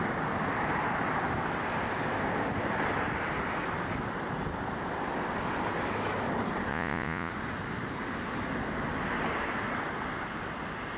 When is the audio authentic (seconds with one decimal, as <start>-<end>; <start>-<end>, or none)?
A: 0.0-6.7; 7.3-11.0

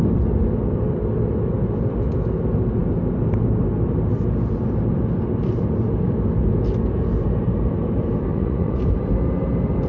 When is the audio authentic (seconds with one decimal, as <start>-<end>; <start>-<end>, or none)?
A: 0.0-8.3; 8.8-9.9

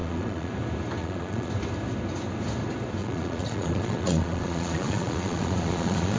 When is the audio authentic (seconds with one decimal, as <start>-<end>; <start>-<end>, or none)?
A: 0.5-1.0; 1.5-3.0

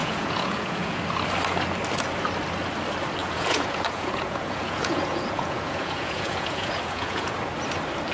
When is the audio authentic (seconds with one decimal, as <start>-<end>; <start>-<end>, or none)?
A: 1.0-3.2; 7.3-8.1

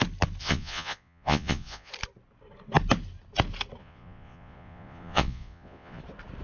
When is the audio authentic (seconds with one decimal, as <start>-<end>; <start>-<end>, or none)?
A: 0.0-0.4; 1.9-3.8; 6.0-6.4

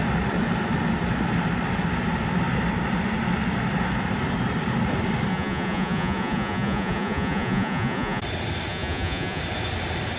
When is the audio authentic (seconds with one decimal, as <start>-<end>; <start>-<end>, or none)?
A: 0.0-5.3; 8.2-8.7; 9.4-10.2